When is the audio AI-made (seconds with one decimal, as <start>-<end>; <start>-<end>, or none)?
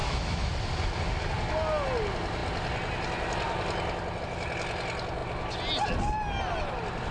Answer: 0.0-0.5